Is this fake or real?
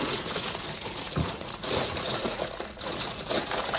fake